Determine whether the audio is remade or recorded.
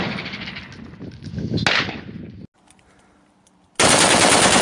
recorded